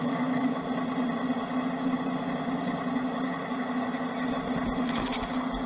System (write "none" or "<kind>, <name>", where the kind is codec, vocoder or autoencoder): none